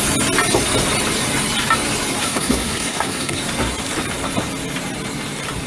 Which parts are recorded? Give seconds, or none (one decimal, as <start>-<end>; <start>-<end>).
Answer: 0.0-2.2; 3.4-5.7